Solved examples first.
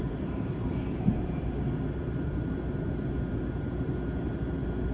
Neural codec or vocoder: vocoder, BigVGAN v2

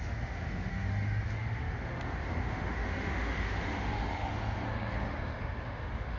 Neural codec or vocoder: autoencoder, DAC-VAE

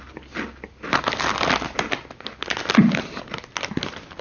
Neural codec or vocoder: none